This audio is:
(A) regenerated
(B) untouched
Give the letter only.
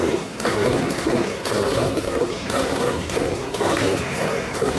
A